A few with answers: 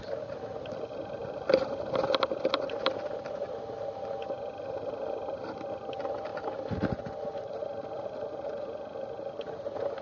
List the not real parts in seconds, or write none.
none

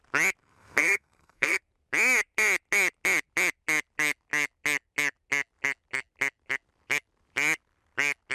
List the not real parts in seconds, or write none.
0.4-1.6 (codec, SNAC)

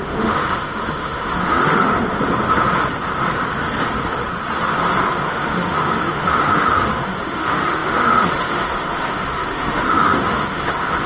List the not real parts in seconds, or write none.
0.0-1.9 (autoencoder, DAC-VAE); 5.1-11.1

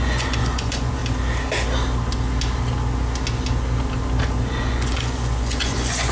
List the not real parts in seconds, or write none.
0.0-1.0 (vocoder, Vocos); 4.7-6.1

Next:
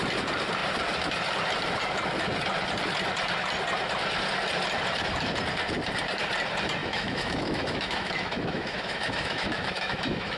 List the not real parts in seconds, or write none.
6.8-10.4 (autoencoder, DAC-VAE)